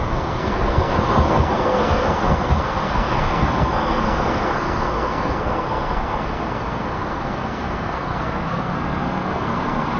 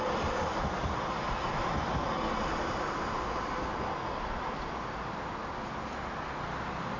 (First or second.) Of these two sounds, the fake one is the first